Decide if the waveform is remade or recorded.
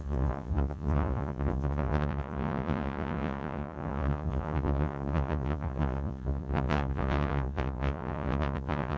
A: remade